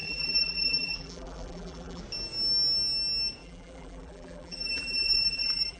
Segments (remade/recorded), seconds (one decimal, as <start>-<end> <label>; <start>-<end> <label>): 0.0-2.0 remade; 2.0-3.4 recorded; 3.4-5.8 remade